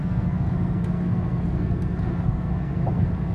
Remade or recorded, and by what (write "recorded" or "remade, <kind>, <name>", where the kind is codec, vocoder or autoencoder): remade, codec, SNAC